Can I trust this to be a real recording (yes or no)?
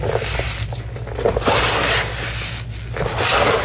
yes